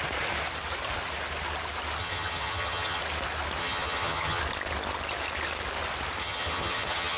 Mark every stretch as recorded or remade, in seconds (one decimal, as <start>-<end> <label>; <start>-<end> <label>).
0.0-2.0 recorded; 2.0-3.0 remade; 3.0-3.6 recorded; 3.6-4.4 remade; 4.4-6.2 recorded; 6.2-7.2 remade